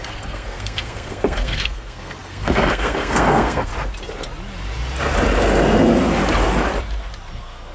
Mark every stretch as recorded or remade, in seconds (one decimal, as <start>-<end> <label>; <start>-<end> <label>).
0.0-3.7 remade; 3.7-7.3 recorded; 7.3-7.7 remade